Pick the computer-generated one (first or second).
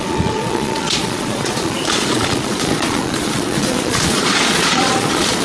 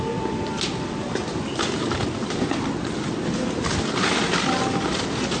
first